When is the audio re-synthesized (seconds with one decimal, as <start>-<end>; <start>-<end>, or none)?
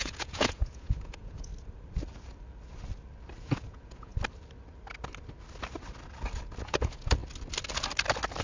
0.0-1.5; 3.4-4.1; 6.6-7.2